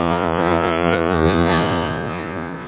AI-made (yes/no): yes